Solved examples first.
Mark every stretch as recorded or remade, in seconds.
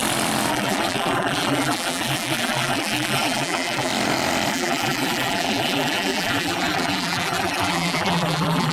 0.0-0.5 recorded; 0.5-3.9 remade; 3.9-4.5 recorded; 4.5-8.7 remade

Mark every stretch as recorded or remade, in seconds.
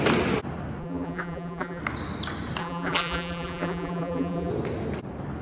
0.0-0.8 recorded; 0.8-1.8 remade; 1.8-2.6 recorded; 2.6-4.5 remade; 4.5-5.4 recorded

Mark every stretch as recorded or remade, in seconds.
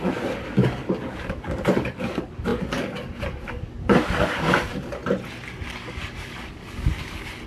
0.0-5.0 remade; 5.0-5.8 recorded; 5.8-7.5 remade